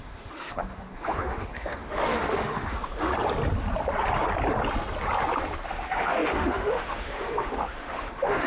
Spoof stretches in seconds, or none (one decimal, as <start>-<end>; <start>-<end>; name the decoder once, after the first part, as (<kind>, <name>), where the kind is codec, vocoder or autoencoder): 0.0-3.1 (autoencoder, DAC-VAE); 5.7-8.5